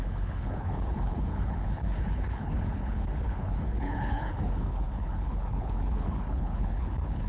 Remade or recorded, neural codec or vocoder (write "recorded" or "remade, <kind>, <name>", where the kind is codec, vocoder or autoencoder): remade, codec, HILCodec